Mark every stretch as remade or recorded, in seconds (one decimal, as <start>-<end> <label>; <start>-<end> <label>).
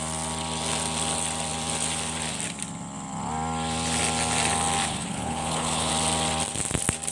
0.0-4.8 recorded; 4.8-5.9 remade; 5.9-7.1 recorded